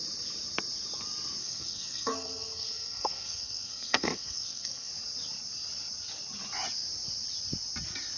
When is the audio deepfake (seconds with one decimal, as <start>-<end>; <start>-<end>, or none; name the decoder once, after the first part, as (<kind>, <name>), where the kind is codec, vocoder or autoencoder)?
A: 1.4-4.9 (codec, SNAC)